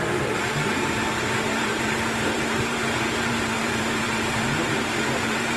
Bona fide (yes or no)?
no